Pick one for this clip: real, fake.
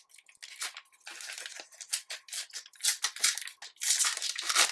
real